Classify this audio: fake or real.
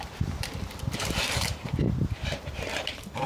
fake